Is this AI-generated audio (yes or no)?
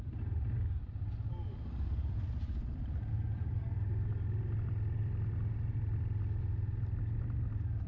no